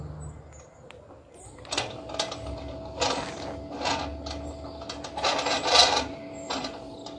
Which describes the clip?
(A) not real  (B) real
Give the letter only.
B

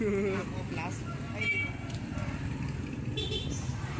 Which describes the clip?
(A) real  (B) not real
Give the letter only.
A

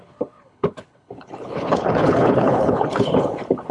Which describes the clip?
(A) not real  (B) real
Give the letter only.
A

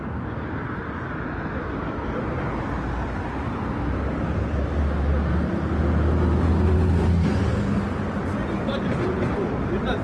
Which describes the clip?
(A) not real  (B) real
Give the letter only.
B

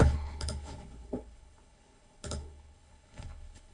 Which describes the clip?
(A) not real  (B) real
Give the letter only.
A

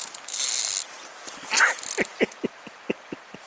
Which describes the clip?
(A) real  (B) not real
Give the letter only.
A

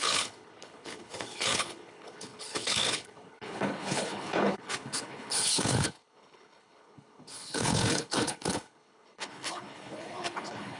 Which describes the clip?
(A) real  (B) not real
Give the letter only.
B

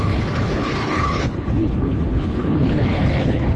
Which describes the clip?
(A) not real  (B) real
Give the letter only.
A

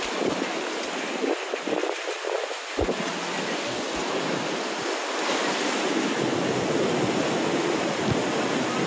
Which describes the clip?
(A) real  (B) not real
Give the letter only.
A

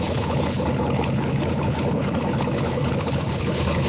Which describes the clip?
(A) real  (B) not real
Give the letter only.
B